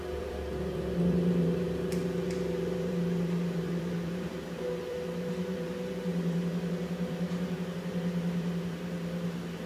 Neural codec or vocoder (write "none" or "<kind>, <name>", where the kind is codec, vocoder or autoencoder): vocoder, BigVGAN v2